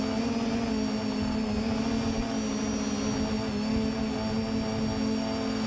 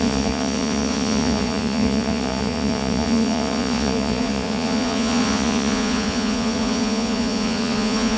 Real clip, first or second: first